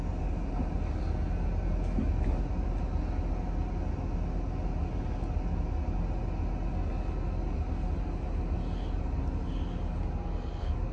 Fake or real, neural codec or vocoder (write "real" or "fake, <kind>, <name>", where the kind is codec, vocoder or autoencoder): real